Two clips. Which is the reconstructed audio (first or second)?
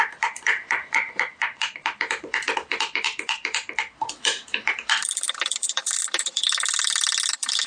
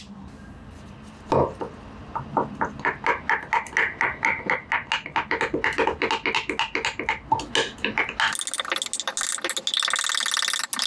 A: first